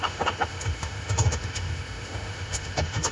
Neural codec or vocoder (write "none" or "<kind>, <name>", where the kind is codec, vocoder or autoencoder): autoencoder, DAC-VAE